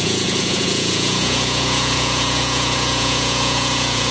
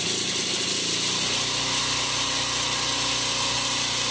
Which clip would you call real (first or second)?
second